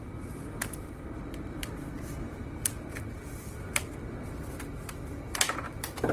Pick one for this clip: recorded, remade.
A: remade